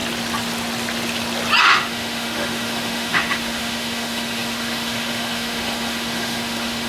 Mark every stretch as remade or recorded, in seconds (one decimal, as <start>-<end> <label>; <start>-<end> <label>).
0.0-1.6 recorded; 1.6-6.9 remade